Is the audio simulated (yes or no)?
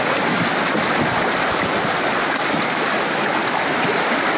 no